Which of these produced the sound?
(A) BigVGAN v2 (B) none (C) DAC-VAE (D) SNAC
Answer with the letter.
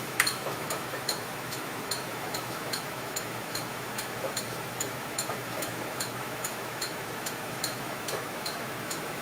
C